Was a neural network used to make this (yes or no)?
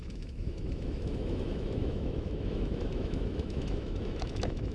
yes